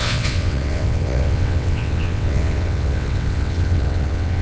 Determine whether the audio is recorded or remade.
remade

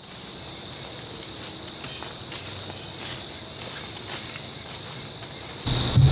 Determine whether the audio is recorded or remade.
recorded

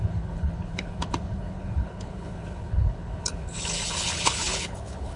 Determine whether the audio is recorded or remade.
remade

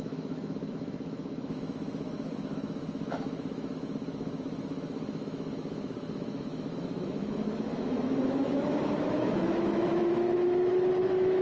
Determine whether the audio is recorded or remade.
remade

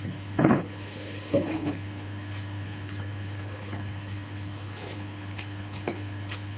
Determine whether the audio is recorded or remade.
remade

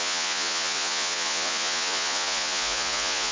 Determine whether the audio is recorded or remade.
remade